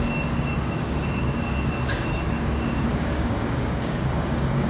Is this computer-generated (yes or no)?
yes